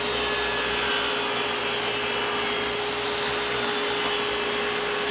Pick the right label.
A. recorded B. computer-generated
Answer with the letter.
A